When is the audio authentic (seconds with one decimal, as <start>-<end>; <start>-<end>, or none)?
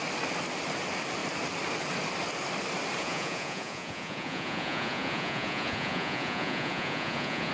0.0-3.0